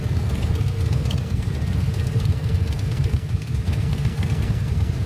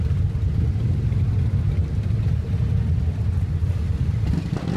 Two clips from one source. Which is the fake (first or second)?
first